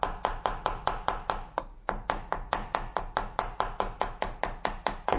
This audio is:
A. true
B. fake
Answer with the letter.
A